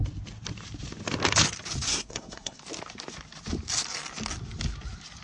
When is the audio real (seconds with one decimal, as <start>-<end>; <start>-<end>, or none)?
0.0-1.9; 2.6-5.2